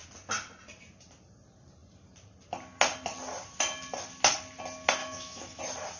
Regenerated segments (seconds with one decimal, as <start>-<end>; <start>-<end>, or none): 5.0-5.6